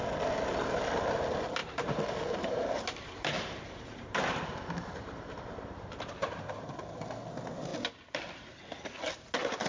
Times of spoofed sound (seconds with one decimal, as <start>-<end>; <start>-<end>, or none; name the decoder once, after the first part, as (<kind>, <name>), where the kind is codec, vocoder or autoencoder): 1.6-6.6 (vocoder, BigVGAN v2)